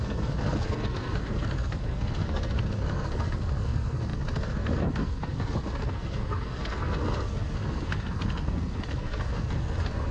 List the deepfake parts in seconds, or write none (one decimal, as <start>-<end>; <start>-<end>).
0.0-10.1